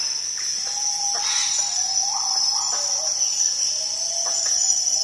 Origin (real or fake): real